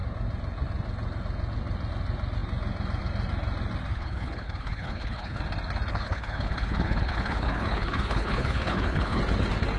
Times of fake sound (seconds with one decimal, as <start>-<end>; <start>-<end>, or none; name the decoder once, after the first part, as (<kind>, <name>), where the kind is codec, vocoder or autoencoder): 3.9-5.4 (codec, HILCodec); 5.9-9.2

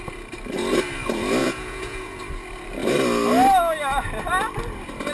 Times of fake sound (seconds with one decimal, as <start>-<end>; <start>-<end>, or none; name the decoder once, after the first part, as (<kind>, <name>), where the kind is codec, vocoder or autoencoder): 1.4-2.2 (vocoder, Vocos)

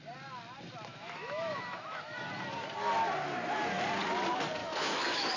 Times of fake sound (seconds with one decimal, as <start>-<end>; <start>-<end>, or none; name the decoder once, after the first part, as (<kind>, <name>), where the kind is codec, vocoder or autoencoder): 0.9-2.3 (autoencoder, DAC-VAE); 4.6-5.4

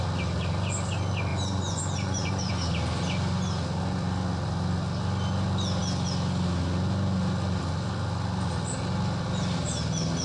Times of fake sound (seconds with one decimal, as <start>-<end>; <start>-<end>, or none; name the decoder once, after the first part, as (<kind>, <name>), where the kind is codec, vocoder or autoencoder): 1.3-2.5 (vocoder, Vocos)

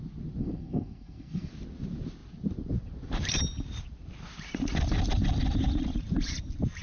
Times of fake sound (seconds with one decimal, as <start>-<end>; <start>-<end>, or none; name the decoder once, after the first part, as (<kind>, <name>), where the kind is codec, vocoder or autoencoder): 0.4-1.5 (codec, SNAC)

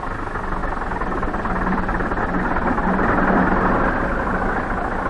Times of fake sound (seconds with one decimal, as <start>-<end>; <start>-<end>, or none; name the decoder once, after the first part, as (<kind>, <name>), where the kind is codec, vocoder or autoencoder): none

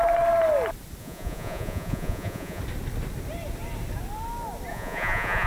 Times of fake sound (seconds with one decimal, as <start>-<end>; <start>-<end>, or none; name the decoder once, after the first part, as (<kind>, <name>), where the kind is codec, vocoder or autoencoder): 1.0-2.6 (vocoder, Vocos); 4.7-5.5